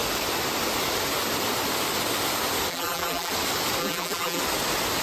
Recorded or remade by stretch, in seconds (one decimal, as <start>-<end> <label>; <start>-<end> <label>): 0.0-2.7 recorded; 2.7-3.3 remade; 3.3-3.8 recorded; 3.8-4.4 remade; 4.4-5.0 recorded